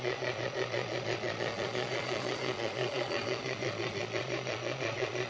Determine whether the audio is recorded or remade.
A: remade